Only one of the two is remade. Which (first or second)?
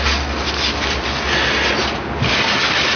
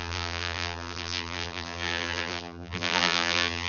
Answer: second